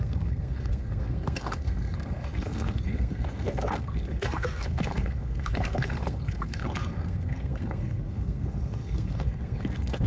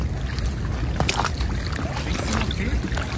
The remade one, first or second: first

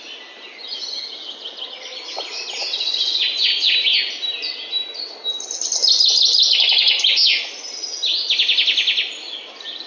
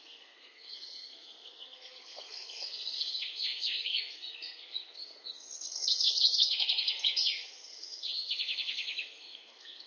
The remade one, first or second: second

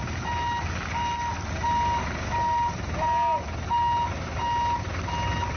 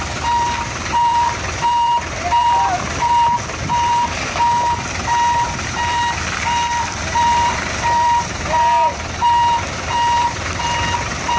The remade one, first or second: second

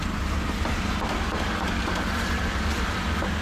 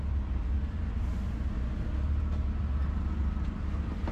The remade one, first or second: first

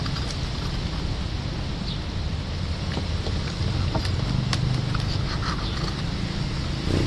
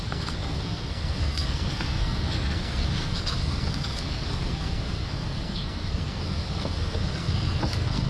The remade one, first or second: second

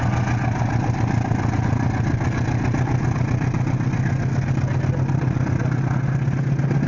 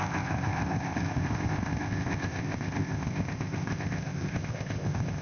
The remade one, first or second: second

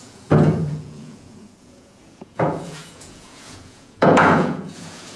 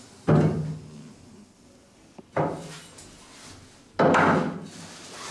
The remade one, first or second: first